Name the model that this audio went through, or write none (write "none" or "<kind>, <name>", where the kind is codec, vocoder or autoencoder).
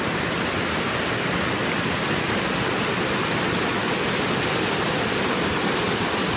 none